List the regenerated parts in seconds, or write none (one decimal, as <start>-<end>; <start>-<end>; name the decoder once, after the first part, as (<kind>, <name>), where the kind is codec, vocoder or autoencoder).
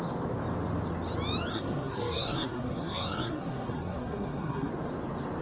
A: 1.5-4.7 (codec, SNAC)